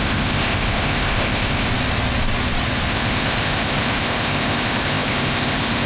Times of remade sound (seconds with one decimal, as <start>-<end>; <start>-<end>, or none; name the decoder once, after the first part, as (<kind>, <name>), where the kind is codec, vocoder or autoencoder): 0.0-1.7 (codec, ZipCodec); 2.9-5.9